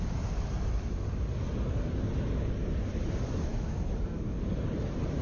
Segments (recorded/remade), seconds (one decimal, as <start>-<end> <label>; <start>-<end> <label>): 0.0-3.5 recorded; 3.5-4.2 remade; 4.2-5.2 recorded